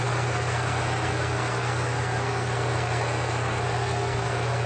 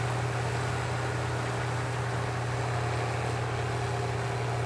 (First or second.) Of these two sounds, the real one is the second